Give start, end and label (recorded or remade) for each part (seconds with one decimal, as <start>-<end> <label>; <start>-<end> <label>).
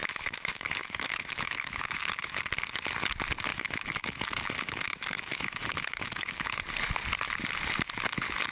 0.0-2.4 remade; 2.4-3.5 recorded; 3.5-6.6 remade; 6.6-8.5 recorded